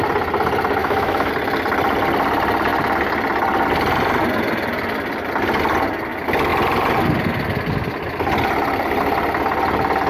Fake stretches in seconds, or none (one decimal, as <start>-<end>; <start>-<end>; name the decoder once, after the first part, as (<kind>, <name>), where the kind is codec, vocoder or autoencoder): 0.8-1.3 (autoencoder, DAC-VAE)

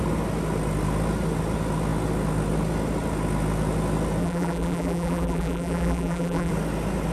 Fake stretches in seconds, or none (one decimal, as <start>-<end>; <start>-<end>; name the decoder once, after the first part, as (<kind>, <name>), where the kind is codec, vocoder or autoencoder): 4.2-6.5 (vocoder, BigVGAN v2)

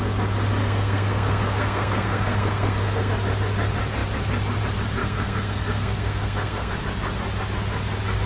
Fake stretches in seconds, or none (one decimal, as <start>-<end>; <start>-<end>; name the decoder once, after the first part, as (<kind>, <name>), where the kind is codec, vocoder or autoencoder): 0.6-3.1 (codec, SNAC); 5.0-6.7

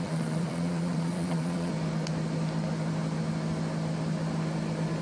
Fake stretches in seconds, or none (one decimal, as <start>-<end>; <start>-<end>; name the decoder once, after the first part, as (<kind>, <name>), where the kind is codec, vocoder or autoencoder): 0.0-1.7 (vocoder, Vocos)

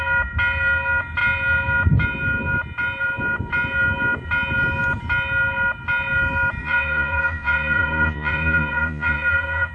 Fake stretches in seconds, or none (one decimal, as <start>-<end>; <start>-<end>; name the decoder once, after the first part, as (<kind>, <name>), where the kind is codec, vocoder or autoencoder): 6.6-9.7 (vocoder, Vocos)

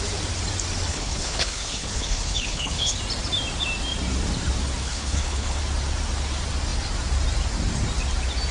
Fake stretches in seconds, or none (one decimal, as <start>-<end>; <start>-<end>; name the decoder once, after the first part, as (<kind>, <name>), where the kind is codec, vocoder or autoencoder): 0.9-3.0 (codec, HILCodec); 4.8-5.6